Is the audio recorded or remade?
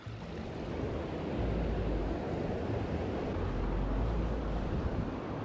recorded